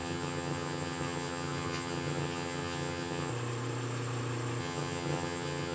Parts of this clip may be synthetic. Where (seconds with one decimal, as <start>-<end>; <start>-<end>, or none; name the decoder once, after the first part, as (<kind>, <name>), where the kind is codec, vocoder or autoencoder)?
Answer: 0.0-3.3 (vocoder, HiFi-GAN); 4.6-5.7